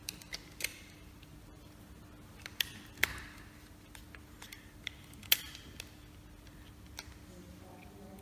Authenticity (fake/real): real